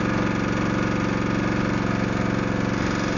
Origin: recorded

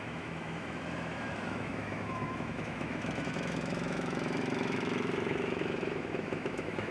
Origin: remade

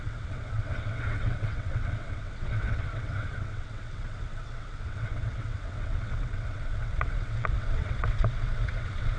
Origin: remade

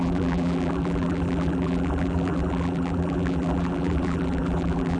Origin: remade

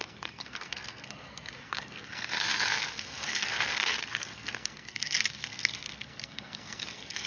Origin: remade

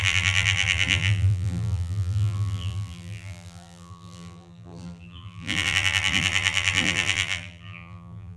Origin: remade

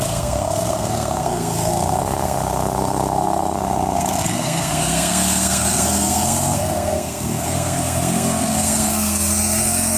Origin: remade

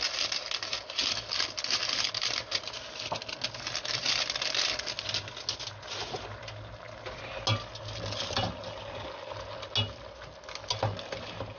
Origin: recorded